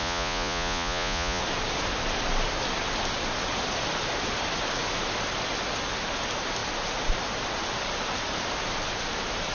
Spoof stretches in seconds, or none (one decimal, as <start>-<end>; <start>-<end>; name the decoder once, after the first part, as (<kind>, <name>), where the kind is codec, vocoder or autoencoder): 0.0-1.4 (vocoder, Vocos)